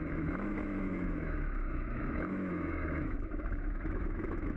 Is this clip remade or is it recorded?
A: remade